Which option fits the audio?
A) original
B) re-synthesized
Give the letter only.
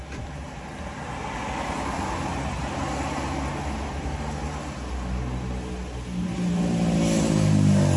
A